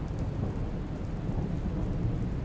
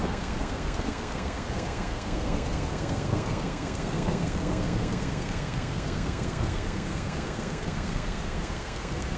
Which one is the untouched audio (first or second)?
first